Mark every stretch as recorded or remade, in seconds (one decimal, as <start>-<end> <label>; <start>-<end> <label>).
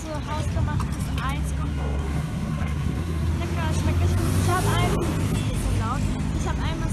0.0-1.7 recorded; 1.7-3.3 remade; 3.3-6.9 recorded